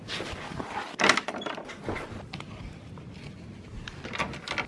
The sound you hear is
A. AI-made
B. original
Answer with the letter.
B